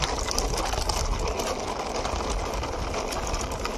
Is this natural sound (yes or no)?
yes